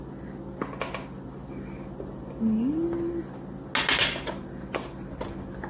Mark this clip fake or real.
real